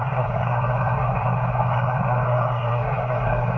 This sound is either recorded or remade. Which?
remade